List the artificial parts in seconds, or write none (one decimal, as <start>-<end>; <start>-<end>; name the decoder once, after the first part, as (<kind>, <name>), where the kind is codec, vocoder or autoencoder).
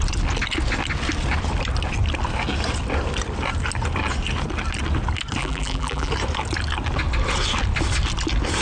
5.4-6.1 (vocoder, BigVGAN v2)